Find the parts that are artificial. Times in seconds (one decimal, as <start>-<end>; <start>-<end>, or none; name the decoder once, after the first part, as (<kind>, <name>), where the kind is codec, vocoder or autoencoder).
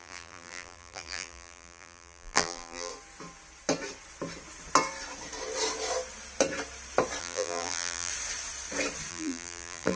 0.0-2.9 (vocoder, BigVGAN v2); 7.2-8.1; 9.1-10.0